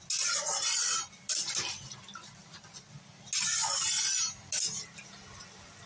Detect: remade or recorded recorded